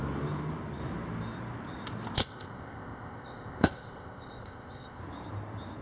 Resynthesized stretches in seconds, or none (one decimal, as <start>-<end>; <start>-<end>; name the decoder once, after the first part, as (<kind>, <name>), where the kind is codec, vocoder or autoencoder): 2.2-5.0 (codec, ZipCodec)